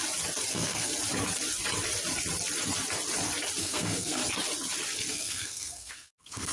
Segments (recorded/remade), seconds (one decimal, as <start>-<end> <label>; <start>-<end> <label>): 0.0-0.5 recorded; 0.5-0.9 remade; 0.9-3.6 recorded; 3.6-4.2 remade; 4.2-5.1 recorded; 5.1-6.5 remade